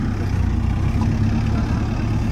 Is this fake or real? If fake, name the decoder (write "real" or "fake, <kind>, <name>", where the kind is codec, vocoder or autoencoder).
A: real